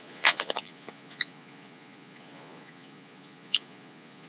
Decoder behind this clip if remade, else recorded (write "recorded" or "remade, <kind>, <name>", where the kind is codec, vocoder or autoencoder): remade, vocoder, Vocos